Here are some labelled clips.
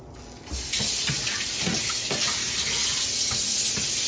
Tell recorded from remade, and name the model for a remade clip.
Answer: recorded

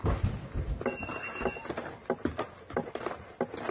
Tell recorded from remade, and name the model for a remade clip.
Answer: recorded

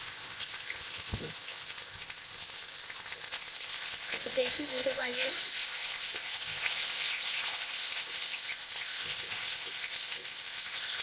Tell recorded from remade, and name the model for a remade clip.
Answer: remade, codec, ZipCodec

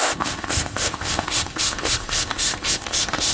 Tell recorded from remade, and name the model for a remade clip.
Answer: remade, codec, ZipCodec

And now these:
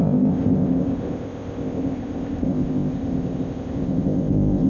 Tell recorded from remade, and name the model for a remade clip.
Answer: remade, codec, ZipCodec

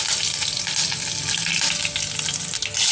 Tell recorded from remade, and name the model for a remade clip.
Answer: recorded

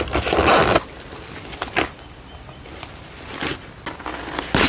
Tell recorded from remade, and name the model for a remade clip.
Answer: recorded